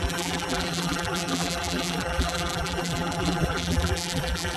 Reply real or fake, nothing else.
fake